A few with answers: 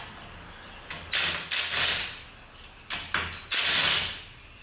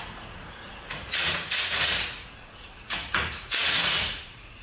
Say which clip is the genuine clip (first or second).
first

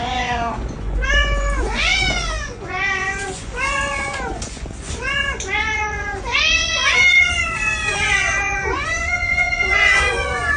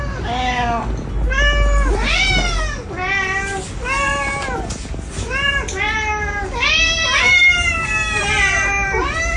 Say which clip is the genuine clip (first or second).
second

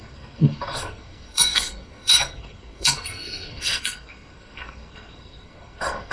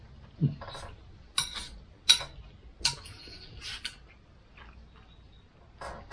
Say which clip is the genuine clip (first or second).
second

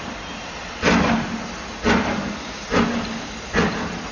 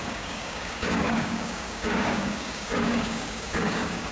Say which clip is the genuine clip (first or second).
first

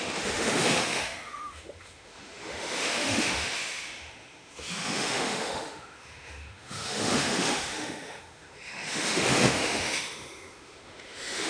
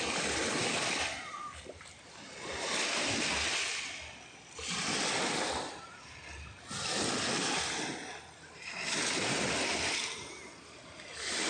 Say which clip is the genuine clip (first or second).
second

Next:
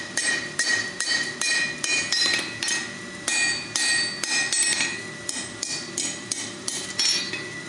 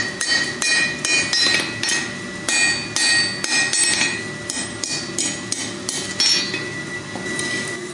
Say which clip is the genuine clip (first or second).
second